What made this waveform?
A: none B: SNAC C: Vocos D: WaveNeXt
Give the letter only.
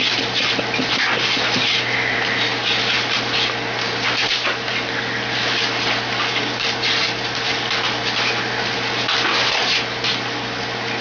A